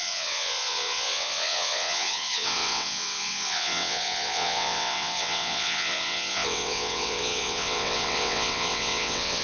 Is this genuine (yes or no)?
no